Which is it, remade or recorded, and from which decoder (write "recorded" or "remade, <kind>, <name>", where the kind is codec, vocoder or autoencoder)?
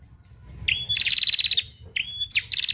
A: recorded